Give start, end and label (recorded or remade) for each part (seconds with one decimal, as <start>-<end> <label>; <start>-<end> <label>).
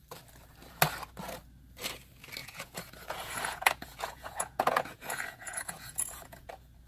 0.0-2.4 recorded; 2.4-6.5 remade; 6.5-6.9 recorded